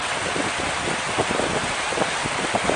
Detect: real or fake fake